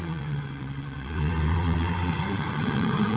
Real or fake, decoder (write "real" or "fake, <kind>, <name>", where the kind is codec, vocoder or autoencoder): fake, vocoder, WaveNeXt